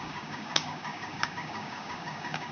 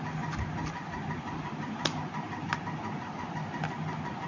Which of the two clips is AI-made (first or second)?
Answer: first